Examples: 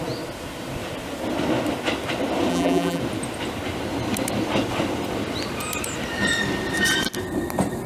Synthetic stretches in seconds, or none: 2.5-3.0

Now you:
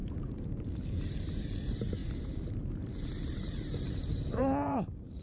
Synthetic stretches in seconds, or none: 0.0-1.0; 2.0-5.2

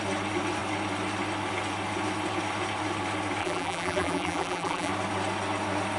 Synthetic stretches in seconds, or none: 3.4-4.9

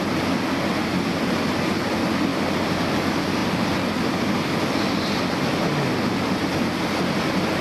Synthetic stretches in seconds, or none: 2.3-3.0; 3.4-3.9

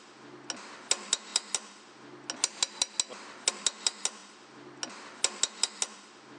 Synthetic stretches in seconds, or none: none